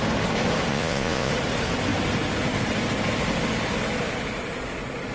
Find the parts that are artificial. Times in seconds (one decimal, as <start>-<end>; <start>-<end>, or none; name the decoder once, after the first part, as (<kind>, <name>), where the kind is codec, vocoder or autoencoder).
0.7-1.3 (vocoder, Vocos)